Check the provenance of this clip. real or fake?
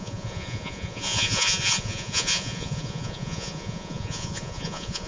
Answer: fake